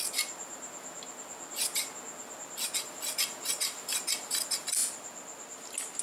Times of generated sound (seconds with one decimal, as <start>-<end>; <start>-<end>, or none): none